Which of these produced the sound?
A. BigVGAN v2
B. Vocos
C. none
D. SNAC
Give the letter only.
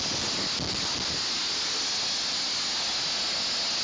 C